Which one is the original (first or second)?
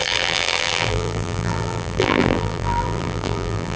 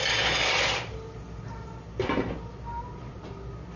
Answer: second